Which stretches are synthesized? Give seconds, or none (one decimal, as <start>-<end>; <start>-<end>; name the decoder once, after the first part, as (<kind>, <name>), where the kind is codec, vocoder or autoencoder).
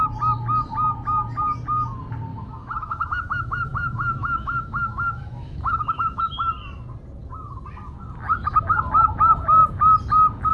2.3-6.2 (autoencoder, DAC-VAE)